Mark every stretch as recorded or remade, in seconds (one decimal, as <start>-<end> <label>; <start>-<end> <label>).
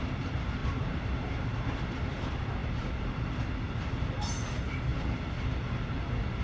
0.0-2.6 remade; 2.6-3.7 recorded; 3.7-4.9 remade; 4.9-6.4 recorded